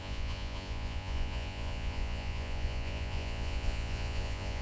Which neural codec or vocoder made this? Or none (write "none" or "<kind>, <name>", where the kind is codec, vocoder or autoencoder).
vocoder, Vocos